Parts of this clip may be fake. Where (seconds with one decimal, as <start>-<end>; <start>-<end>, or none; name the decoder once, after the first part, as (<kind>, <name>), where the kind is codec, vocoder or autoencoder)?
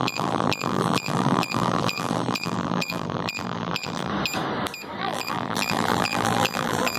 0.0-4.1 (vocoder, BigVGAN v2); 5.0-7.0